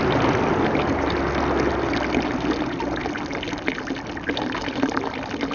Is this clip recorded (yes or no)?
yes